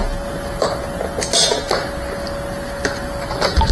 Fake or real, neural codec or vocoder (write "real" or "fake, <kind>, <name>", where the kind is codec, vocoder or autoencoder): real